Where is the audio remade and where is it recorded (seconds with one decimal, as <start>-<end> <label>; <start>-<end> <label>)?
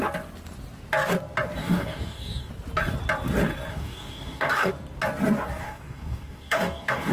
0.0-1.6 recorded; 1.6-2.5 remade; 2.5-3.7 recorded; 3.7-4.7 remade; 4.7-5.6 recorded; 5.6-7.1 remade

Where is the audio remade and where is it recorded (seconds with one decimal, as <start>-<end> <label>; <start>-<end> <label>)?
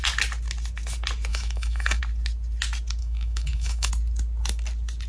0.0-1.3 recorded; 1.3-2.0 remade; 2.0-3.0 recorded; 3.0-3.9 remade; 3.9-5.1 recorded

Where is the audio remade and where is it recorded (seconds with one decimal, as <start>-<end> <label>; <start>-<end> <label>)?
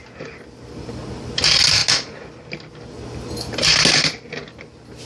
0.0-5.1 recorded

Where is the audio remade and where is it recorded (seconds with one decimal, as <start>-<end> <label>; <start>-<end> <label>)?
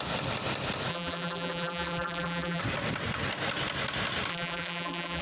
0.0-0.9 recorded; 0.9-2.6 remade; 2.6-4.3 recorded; 4.3-5.2 remade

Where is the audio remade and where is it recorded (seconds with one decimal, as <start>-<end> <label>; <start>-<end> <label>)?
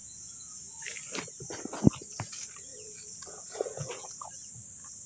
0.0-0.6 remade; 0.6-2.7 recorded; 2.7-4.3 remade; 4.3-5.1 recorded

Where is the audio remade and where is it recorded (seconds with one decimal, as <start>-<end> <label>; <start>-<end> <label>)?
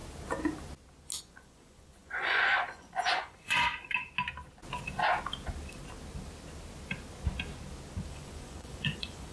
0.0-1.2 recorded; 1.2-3.7 remade; 3.7-8.1 recorded; 8.1-9.3 remade